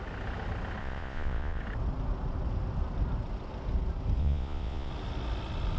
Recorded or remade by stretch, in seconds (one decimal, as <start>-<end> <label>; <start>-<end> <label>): 0.0-0.8 recorded; 0.8-1.6 remade; 1.6-4.2 recorded; 4.2-4.9 remade; 4.9-5.8 recorded